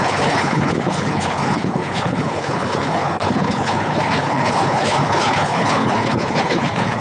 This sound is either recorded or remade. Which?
remade